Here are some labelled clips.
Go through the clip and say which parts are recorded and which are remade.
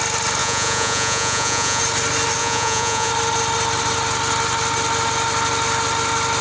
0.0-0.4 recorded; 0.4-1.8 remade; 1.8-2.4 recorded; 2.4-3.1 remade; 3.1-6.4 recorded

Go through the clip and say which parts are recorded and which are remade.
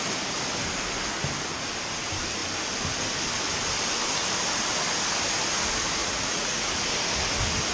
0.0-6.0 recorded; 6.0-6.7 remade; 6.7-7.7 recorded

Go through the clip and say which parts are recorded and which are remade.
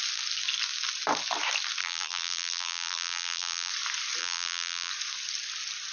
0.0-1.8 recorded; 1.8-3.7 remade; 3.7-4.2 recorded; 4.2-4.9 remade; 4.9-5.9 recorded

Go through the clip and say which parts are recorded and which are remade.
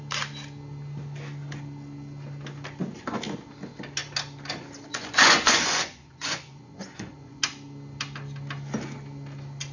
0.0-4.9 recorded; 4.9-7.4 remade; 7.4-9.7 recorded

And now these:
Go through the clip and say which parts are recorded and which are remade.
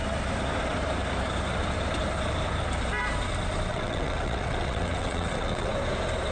0.0-3.7 recorded; 3.7-5.7 remade; 5.7-6.3 recorded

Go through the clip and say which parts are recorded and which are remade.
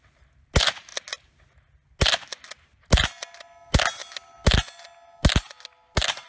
0.0-6.3 recorded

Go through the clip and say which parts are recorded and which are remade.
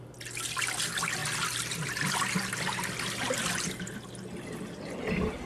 0.0-5.5 recorded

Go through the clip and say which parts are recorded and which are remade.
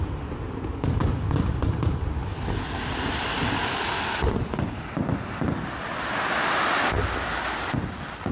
0.0-8.3 recorded